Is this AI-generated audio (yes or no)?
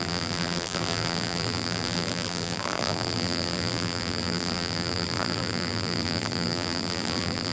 yes